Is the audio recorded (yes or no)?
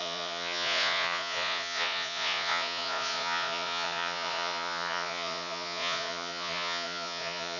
no